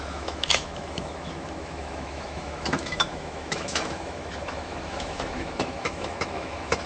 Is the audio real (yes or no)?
no